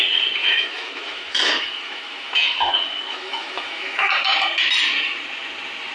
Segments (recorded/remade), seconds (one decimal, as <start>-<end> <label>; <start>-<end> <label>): 0.0-0.4 recorded; 0.4-2.7 remade; 2.7-3.1 recorded; 3.1-4.1 remade; 4.1-5.9 recorded